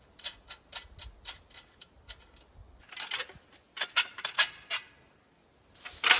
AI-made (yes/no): no